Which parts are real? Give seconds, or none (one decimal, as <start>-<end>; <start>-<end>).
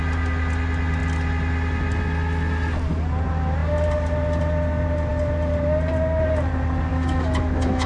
0.0-6.9